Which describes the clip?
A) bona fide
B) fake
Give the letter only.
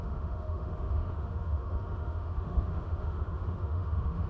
B